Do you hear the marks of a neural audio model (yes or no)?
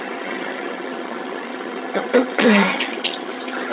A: yes